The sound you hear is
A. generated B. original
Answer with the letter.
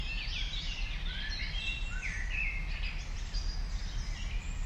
B